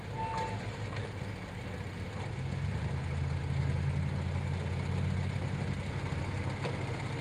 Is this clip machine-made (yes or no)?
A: no